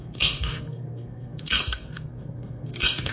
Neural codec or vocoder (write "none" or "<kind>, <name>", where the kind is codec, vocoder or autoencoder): codec, SNAC